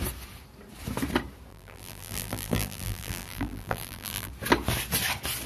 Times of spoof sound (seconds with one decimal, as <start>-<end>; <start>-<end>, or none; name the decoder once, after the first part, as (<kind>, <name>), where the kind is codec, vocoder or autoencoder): 1.5-4.3 (vocoder, BigVGAN v2)